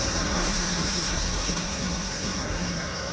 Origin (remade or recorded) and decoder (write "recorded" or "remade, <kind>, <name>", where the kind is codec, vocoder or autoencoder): remade, codec, SNAC